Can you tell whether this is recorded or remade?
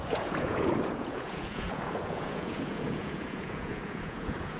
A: remade